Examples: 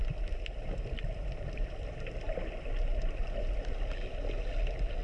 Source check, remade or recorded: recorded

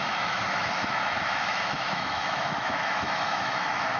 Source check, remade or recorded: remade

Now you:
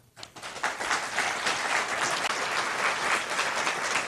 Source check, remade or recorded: recorded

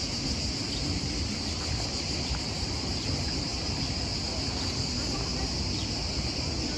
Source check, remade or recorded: recorded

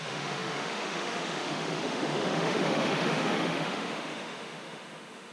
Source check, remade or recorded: remade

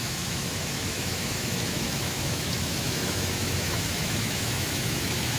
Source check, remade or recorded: remade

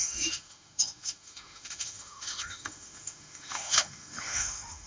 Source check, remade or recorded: remade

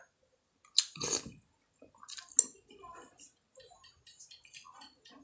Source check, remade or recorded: recorded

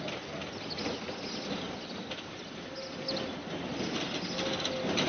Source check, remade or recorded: recorded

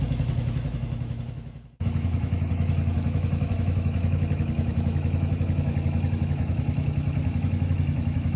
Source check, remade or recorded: remade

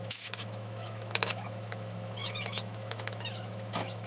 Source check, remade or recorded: remade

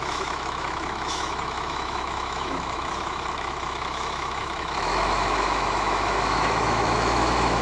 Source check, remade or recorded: remade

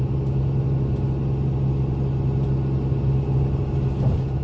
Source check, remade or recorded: recorded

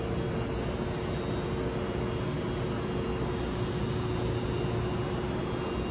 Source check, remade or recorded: recorded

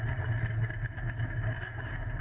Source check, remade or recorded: recorded